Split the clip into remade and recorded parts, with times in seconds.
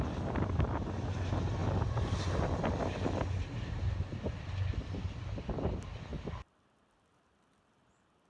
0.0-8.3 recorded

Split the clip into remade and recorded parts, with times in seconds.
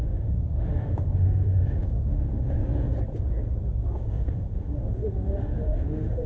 0.0-2.7 remade; 2.7-3.8 recorded; 3.8-6.3 remade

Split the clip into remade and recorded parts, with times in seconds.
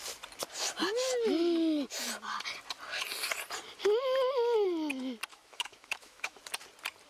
0.0-5.3 recorded; 5.3-6.4 remade; 6.4-7.1 recorded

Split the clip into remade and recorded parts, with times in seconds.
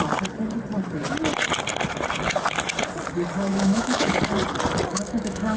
0.0-3.5 recorded; 3.5-4.2 remade; 4.2-4.9 recorded; 4.9-5.6 remade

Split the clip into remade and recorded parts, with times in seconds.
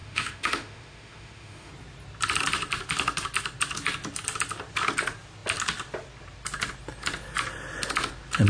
0.0-1.7 remade; 1.7-8.5 recorded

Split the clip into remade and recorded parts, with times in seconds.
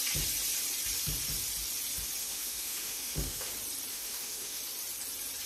0.0-2.2 recorded; 2.2-3.5 remade; 3.5-3.9 recorded; 3.9-4.6 remade; 4.6-5.5 recorded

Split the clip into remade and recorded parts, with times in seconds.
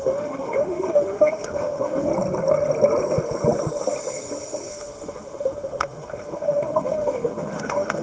0.0-2.1 remade; 2.1-4.7 recorded; 4.7-8.0 remade